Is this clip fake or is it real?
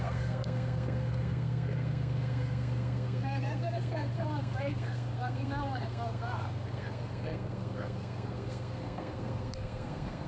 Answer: fake